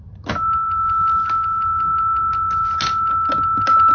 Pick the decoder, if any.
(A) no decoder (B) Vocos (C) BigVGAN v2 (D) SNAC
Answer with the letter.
A